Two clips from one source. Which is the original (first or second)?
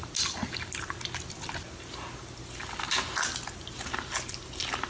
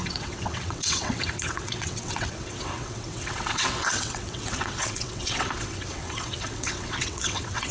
first